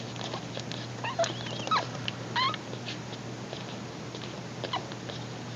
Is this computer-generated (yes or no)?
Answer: no